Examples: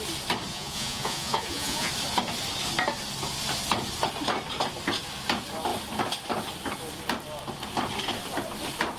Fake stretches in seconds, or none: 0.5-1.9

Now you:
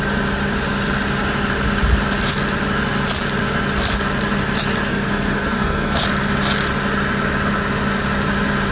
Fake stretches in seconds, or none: 4.9-6.0

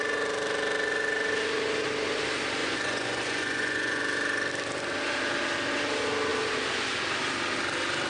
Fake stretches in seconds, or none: 2.6-4.0

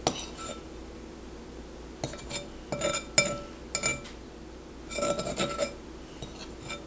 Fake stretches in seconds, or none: none

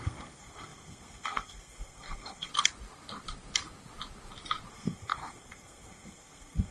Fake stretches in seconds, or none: 0.0-2.5; 4.7-6.7

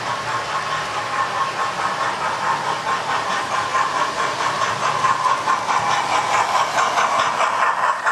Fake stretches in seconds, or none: none

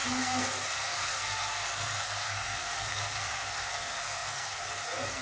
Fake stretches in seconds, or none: 0.0-5.2

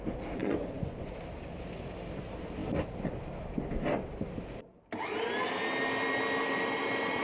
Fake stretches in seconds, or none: 0.4-1.1